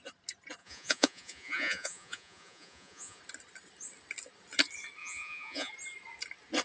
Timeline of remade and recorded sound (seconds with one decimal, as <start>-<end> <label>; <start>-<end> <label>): 0.0-0.6 recorded; 0.6-3.2 remade; 3.2-5.0 recorded; 5.0-5.7 remade; 5.7-6.6 recorded

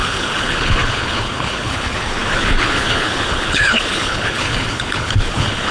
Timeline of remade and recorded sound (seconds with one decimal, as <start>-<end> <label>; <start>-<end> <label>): 0.0-5.7 remade

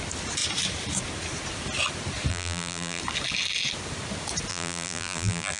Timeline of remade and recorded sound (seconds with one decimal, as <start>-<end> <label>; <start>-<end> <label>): 0.0-2.3 recorded; 2.3-3.0 remade; 3.0-4.5 recorded; 4.5-5.6 remade

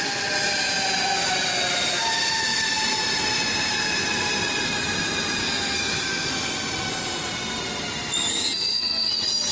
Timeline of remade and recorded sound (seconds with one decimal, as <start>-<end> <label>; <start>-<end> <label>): 0.0-5.4 recorded; 5.4-6.3 remade; 6.3-8.3 recorded; 8.3-9.1 remade; 9.1-9.5 recorded

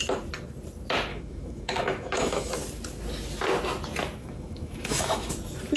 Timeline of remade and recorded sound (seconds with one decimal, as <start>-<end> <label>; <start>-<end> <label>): 0.0-1.1 recorded; 1.1-2.5 remade; 2.5-4.2 recorded; 4.2-5.3 remade; 5.3-5.8 recorded

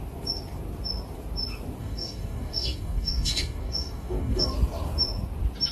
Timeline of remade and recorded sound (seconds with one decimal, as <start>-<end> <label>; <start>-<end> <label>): 0.0-1.8 recorded; 1.8-4.5 remade; 4.5-5.7 recorded

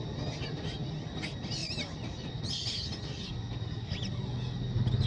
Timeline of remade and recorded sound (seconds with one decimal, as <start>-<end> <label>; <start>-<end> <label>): 0.0-1.6 recorded; 1.6-2.9 remade; 2.9-5.1 recorded